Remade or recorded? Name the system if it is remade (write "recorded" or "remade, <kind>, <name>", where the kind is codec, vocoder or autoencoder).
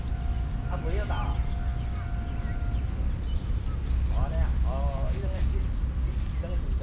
recorded